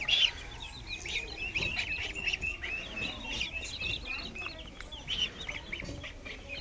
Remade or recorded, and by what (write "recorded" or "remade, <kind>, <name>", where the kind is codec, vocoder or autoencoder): recorded